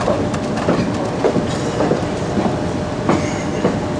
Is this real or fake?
real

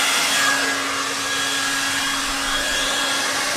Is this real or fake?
real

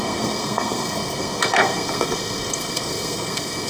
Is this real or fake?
fake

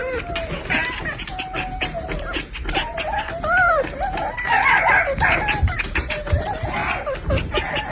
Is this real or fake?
real